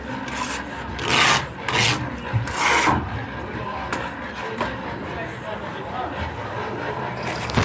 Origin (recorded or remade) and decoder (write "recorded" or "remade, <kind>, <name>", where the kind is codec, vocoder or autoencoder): recorded